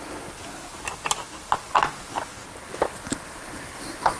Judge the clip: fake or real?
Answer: real